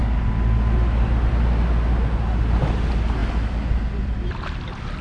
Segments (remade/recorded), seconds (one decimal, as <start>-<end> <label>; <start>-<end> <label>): 0.0-5.0 recorded